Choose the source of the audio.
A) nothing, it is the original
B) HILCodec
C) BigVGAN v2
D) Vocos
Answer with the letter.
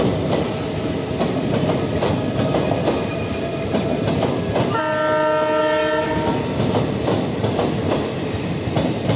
A